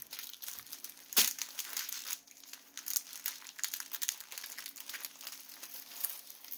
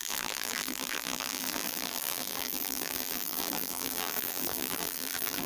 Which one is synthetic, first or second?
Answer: second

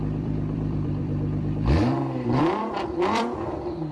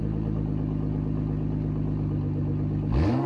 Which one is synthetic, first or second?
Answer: first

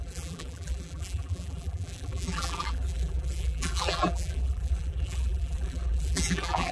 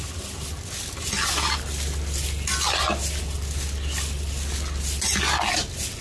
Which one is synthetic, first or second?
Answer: first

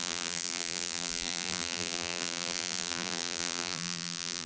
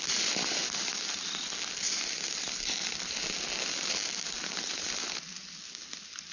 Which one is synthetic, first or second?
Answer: first